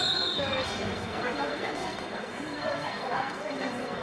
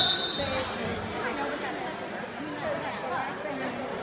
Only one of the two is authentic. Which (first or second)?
second